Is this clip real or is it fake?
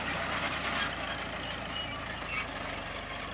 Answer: real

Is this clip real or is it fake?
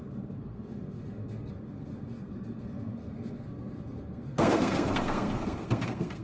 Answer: fake